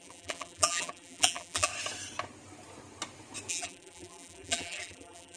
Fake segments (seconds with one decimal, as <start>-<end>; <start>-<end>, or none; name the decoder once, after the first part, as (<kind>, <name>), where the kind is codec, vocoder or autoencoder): 0.0-1.7 (vocoder, BigVGAN v2); 3.5-5.4